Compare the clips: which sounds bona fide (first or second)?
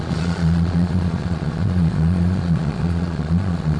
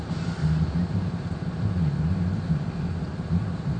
second